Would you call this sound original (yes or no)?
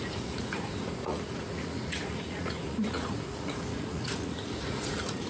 no